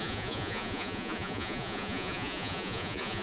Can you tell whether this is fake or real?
fake